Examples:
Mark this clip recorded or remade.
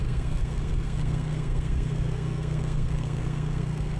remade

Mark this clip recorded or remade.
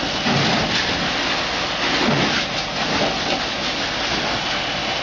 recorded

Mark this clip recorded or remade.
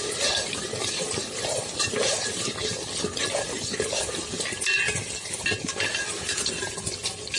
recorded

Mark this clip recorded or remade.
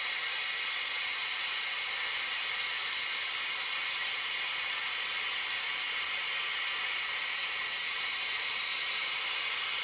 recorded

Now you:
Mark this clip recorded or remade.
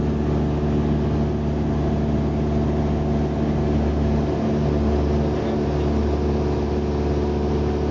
recorded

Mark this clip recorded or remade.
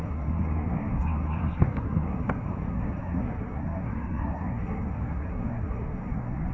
remade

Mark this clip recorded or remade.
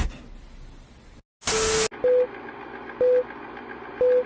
recorded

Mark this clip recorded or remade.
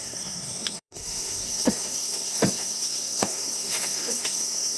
remade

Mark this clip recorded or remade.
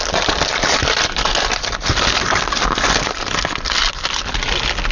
recorded